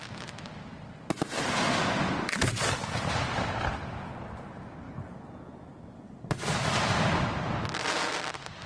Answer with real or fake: real